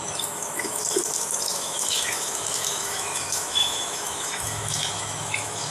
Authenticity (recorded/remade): remade